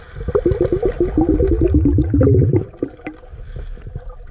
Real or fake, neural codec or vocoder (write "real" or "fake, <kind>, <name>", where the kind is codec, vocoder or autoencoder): real